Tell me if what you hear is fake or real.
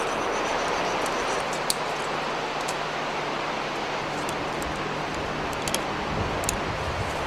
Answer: real